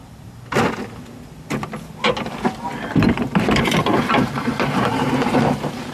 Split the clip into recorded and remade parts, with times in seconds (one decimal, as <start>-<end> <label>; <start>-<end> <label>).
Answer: 0.0-3.5 recorded; 3.5-5.9 remade